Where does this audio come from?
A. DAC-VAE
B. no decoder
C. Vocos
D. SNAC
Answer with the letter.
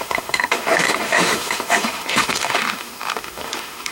A